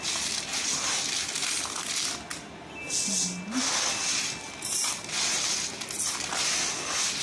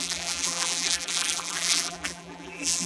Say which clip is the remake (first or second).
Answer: second